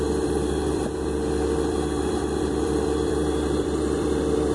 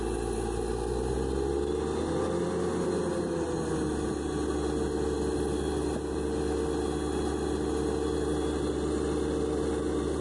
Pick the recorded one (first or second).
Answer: second